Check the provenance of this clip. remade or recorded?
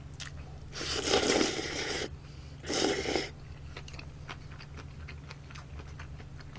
recorded